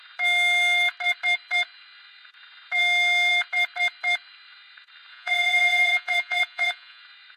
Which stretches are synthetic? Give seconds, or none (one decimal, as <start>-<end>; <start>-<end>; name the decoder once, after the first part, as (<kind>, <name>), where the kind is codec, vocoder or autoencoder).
5.1-7.0 (vocoder, Vocos)